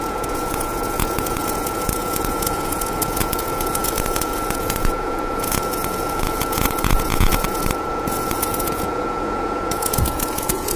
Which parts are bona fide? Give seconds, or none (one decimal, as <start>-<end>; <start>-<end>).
none